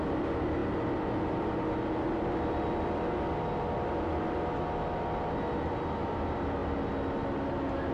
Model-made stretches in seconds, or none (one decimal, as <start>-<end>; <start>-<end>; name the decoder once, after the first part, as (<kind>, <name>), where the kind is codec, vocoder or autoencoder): none